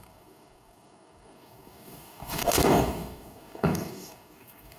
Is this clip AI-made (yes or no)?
yes